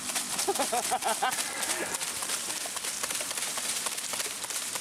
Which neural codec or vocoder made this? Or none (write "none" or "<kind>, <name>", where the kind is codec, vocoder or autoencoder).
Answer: none